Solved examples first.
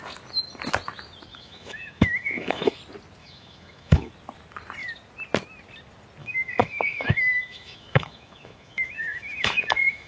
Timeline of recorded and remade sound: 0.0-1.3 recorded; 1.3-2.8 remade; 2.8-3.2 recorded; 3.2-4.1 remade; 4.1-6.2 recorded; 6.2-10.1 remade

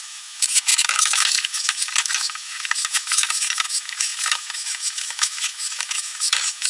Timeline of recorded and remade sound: 0.0-6.7 remade

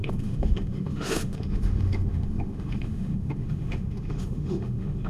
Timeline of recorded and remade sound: 0.0-5.1 remade

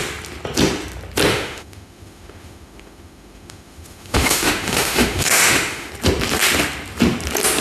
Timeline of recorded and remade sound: 0.0-1.3 recorded; 1.3-5.9 remade; 5.9-7.6 recorded

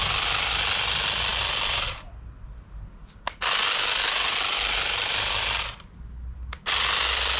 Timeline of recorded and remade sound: 0.0-7.4 recorded

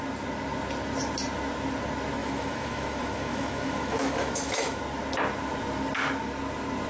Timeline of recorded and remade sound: 0.0-2.2 recorded; 2.2-4.8 remade; 4.8-6.9 recorded